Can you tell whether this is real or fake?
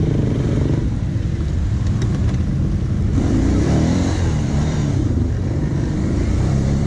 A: fake